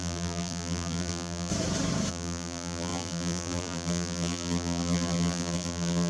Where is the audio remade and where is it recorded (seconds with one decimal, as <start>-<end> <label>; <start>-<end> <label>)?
0.0-1.5 remade; 1.5-2.1 recorded; 2.1-6.1 remade